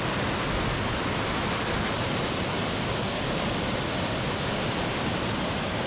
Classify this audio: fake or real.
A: real